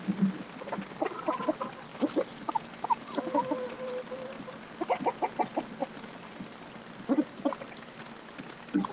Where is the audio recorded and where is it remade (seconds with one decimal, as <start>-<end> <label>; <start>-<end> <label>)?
0.0-1.9 recorded; 1.9-3.5 remade; 3.5-5.8 recorded; 5.8-6.4 remade; 6.4-8.9 recorded